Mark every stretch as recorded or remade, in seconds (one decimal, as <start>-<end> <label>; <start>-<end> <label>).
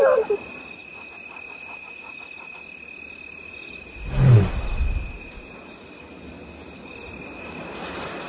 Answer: 0.0-8.3 recorded